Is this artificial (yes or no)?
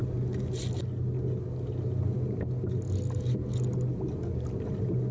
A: no